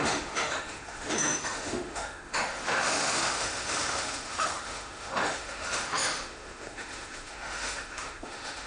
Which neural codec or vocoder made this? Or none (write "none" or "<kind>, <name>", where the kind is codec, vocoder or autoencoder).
autoencoder, DAC-VAE